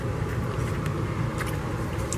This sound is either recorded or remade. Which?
recorded